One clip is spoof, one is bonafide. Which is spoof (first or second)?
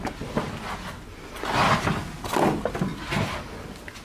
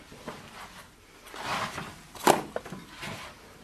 second